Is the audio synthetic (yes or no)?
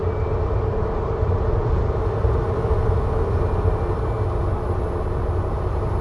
no